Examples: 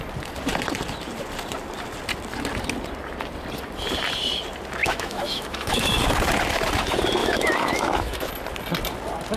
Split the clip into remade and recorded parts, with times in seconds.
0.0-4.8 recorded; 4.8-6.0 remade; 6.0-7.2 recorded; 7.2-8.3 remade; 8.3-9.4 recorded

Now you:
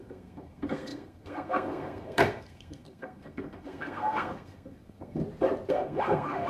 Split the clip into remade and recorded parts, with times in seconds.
0.0-5.2 remade; 5.2-5.7 recorded; 5.7-6.5 remade